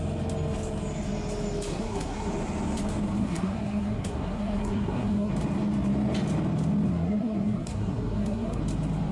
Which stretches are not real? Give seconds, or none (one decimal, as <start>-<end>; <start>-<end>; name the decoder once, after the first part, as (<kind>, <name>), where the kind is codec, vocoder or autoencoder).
1.7-2.3 (codec, SNAC); 3.2-5.3; 6.9-8.6